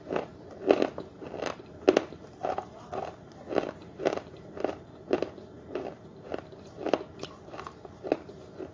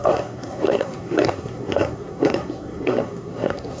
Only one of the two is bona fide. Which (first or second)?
first